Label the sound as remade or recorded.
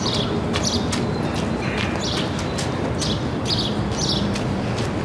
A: recorded